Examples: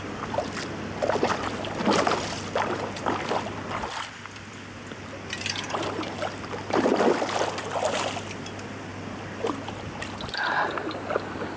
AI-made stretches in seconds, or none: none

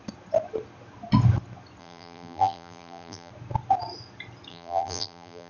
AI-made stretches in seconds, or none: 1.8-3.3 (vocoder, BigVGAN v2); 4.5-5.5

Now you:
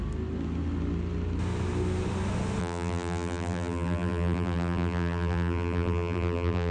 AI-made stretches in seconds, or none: 2.6-6.7 (vocoder, BigVGAN v2)